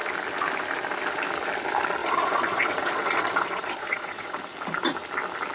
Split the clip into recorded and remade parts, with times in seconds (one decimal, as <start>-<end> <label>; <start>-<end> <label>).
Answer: 0.0-2.0 recorded; 2.0-4.4 remade; 4.4-5.5 recorded